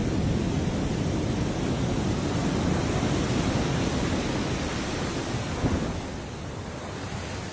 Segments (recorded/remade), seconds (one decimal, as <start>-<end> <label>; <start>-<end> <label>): 0.0-7.5 recorded

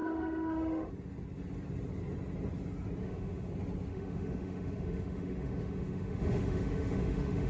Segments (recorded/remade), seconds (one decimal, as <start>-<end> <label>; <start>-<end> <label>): 0.0-0.9 remade; 0.9-3.0 recorded; 3.0-3.5 remade; 3.5-3.9 recorded; 3.9-7.5 remade

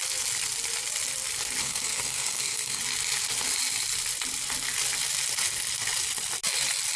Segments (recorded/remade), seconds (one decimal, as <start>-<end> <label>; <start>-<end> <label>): 0.0-1.6 recorded; 1.6-2.8 remade; 2.8-7.0 recorded

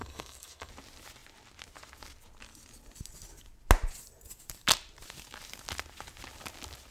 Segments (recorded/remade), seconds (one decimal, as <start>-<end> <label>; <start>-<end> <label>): 0.0-0.7 remade; 0.7-6.9 recorded